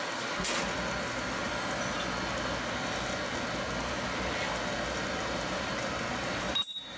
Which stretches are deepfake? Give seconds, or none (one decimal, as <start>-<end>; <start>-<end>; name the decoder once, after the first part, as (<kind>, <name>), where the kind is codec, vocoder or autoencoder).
none